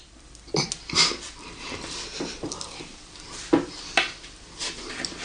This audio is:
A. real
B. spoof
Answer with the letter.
B